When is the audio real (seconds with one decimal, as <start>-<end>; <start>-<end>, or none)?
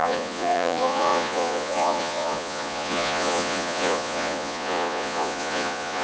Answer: none